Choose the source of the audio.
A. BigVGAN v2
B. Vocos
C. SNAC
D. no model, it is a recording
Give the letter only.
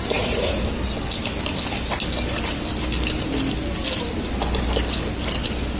D